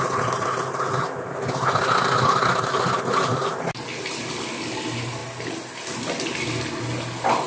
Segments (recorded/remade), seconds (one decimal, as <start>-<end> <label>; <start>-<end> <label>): 0.0-7.5 recorded